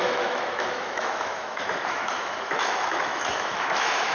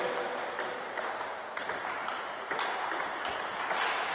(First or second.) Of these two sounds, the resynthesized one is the first